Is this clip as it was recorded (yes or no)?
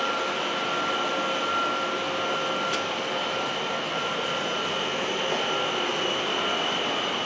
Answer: yes